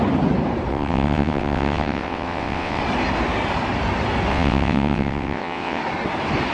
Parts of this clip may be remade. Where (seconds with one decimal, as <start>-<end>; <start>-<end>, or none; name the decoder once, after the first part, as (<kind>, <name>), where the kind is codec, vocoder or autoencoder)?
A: 0.7-2.8 (vocoder, WaveNeXt); 4.3-5.8